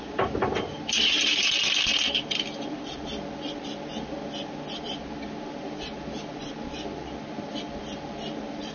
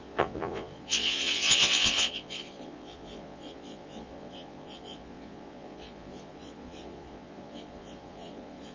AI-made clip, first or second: second